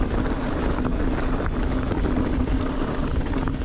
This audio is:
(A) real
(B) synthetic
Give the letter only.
A